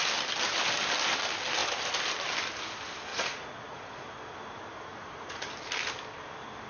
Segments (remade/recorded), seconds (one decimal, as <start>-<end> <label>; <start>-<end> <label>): 0.0-3.1 recorded; 3.1-3.8 remade; 3.8-4.9 recorded; 4.9-5.5 remade; 5.5-6.7 recorded